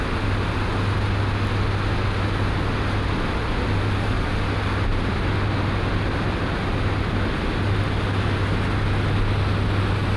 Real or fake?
real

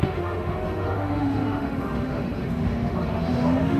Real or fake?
fake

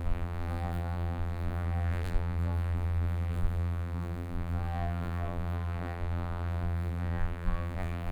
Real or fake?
fake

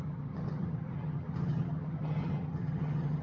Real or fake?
fake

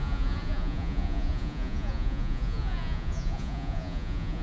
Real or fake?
fake